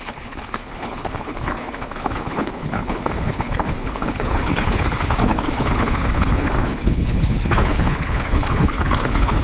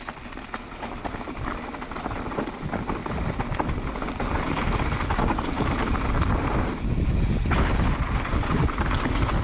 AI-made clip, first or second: first